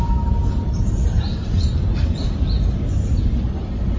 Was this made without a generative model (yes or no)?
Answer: yes